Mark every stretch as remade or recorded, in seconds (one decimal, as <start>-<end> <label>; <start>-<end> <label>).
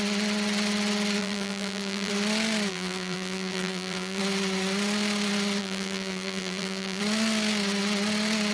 0.0-1.2 recorded; 1.2-2.1 remade; 2.1-2.7 recorded; 2.7-4.2 remade; 4.2-5.6 recorded; 5.6-7.0 remade; 7.0-8.5 recorded